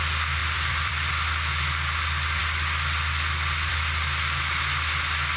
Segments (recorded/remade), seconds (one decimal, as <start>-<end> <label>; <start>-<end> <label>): 0.0-0.4 recorded; 0.4-1.1 remade; 1.1-5.4 recorded